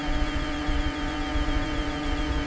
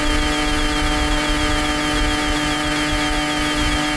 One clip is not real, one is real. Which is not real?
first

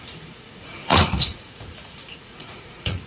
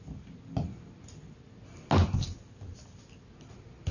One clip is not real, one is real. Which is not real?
first